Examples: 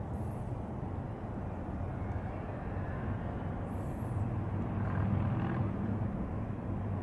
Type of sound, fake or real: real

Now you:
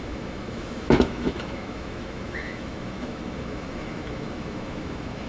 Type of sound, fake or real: fake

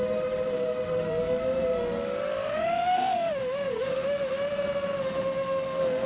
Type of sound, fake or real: fake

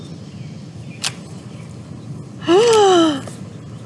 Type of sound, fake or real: real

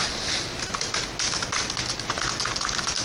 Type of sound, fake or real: real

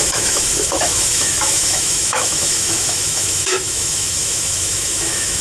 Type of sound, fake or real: fake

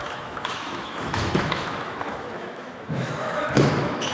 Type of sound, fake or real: fake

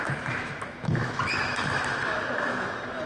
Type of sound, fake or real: fake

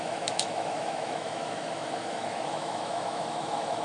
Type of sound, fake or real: fake